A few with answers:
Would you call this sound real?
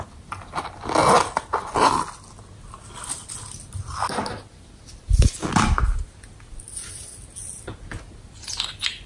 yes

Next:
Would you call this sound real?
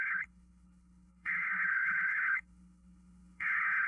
no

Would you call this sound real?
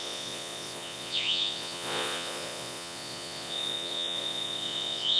no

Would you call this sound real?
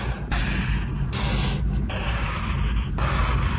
yes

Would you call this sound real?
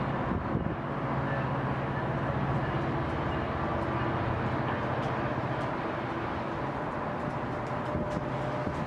yes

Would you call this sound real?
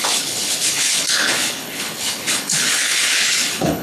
no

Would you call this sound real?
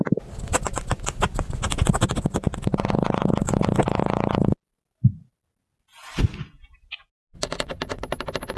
yes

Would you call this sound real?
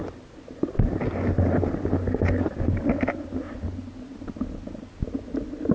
yes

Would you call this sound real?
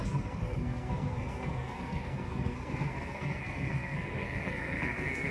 no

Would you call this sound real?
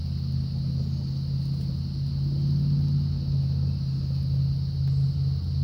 yes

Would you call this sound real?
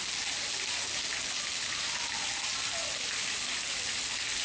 yes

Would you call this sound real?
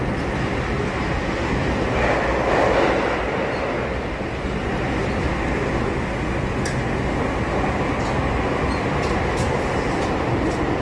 yes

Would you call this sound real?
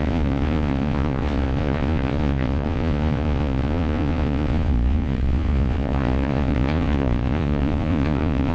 no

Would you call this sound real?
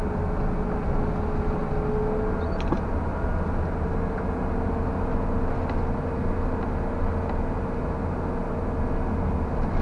yes